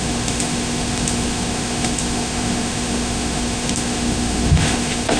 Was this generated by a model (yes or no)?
yes